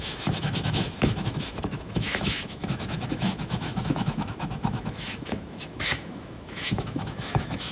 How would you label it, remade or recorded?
remade